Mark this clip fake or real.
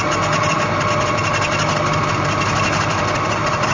real